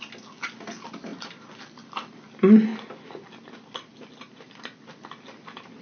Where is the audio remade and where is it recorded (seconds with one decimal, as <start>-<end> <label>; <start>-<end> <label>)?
0.0-5.8 recorded